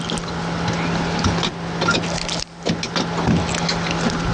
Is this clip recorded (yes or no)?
yes